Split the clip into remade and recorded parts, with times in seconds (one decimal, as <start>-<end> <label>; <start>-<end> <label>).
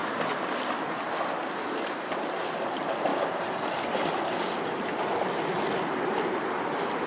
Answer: 0.0-7.1 remade